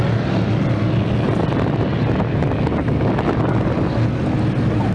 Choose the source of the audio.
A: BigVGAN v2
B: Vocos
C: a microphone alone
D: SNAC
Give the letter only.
C